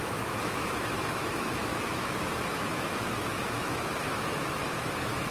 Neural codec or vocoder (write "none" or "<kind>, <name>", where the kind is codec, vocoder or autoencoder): autoencoder, DAC-VAE